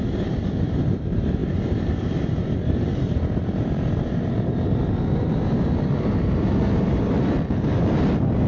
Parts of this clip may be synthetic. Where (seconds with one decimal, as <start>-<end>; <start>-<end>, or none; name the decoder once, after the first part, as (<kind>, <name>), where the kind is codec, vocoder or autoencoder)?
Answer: 0.0-8.5 (vocoder, BigVGAN v2)